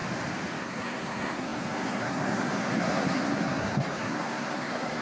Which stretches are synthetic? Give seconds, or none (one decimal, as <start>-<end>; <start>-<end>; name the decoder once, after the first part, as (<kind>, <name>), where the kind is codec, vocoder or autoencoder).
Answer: 0.6-5.0 (codec, SNAC)